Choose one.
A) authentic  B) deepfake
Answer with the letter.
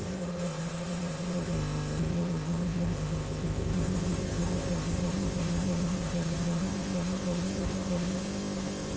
B